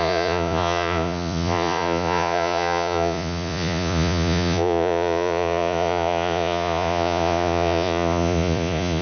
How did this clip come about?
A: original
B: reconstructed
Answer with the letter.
B